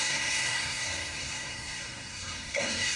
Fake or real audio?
fake